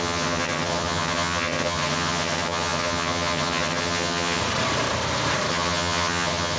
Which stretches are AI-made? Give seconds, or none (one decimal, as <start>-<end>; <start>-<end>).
0.0-4.4; 5.5-6.6